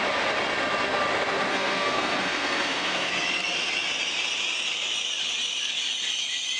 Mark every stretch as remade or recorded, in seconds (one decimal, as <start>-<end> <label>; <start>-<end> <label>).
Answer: 0.0-1.5 recorded; 1.5-3.1 remade; 3.1-6.6 recorded